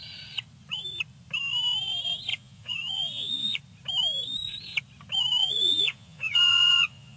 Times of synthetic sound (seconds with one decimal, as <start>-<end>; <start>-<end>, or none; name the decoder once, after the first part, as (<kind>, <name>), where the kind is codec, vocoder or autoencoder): 2.3-3.6 (vocoder, Vocos); 5.4-7.2